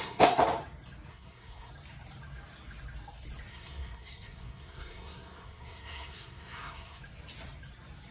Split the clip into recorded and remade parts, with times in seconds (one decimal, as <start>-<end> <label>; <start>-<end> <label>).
0.0-0.4 remade; 0.4-1.1 recorded; 1.1-1.7 remade; 1.7-3.5 recorded; 3.5-7.0 remade; 7.0-8.1 recorded